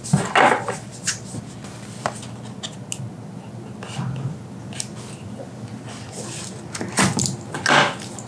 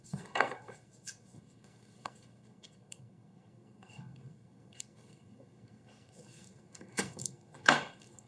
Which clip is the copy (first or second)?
second